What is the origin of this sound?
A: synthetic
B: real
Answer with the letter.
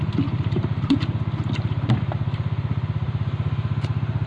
A